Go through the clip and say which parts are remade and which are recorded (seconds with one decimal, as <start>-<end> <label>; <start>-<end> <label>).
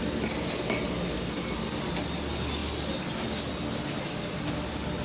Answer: 0.0-5.0 recorded